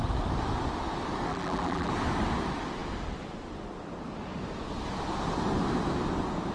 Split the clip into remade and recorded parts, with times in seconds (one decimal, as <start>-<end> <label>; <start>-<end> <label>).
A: 0.0-1.3 recorded; 1.3-1.9 remade; 1.9-6.5 recorded